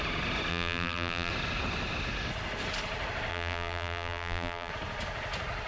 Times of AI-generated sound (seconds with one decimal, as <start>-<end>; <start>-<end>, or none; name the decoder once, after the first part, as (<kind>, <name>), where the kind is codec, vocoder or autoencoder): 0.5-1.3 (vocoder, BigVGAN v2); 3.3-4.7